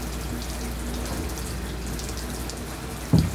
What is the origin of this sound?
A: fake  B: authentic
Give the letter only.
B